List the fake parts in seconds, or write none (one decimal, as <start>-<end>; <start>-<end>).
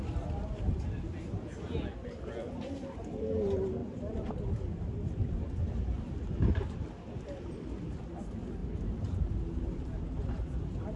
8.6-9.3